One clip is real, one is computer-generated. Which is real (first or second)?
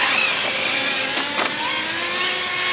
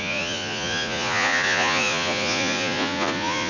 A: first